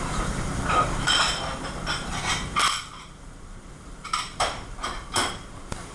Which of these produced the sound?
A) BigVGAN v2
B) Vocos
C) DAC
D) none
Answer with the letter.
A